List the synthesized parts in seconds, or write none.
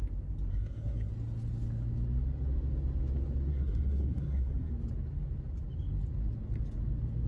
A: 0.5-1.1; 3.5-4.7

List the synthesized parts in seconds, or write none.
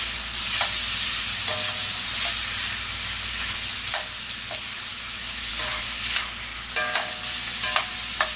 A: 4.9-5.5